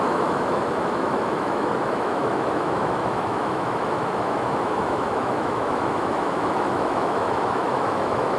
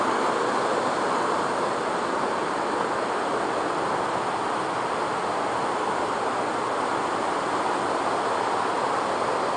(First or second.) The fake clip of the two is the first